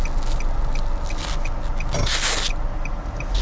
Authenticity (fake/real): real